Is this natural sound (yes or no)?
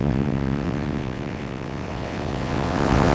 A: no